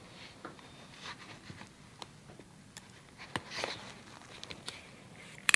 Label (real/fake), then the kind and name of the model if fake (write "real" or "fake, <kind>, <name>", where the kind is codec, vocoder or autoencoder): real